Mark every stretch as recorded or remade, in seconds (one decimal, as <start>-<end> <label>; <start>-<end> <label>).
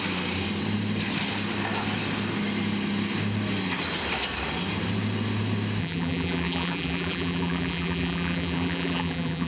0.0-5.8 recorded; 5.8-9.5 remade